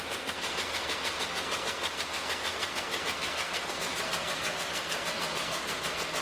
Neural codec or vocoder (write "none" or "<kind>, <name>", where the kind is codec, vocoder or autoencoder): codec, SNAC